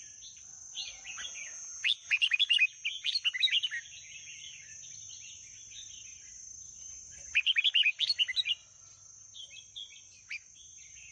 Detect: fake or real real